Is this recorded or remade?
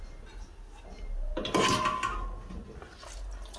recorded